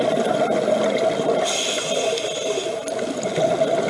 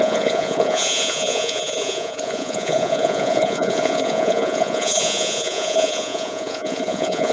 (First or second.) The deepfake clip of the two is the second